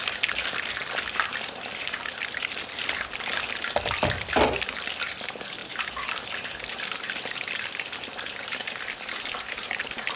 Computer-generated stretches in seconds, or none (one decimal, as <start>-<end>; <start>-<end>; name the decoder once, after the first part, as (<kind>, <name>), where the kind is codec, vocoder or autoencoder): none